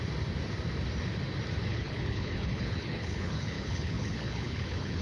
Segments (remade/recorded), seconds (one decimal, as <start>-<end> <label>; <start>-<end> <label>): 0.0-1.7 recorded; 1.7-5.0 remade

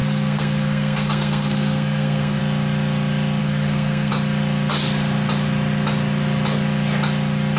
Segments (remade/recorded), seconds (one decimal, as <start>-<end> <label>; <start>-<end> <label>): 0.0-2.4 remade; 2.4-3.4 recorded; 3.4-4.1 remade; 4.1-7.6 recorded